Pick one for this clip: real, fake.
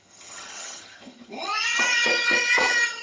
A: fake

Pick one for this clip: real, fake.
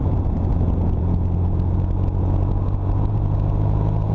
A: fake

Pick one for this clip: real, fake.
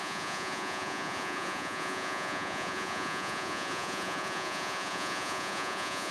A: fake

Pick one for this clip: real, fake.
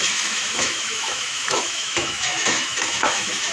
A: fake